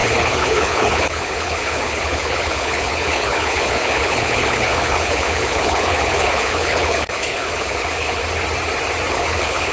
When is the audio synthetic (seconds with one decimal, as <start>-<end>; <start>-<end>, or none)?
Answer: 0.0-8.2; 9.1-9.7